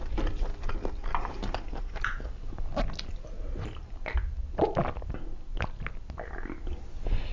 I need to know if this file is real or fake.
real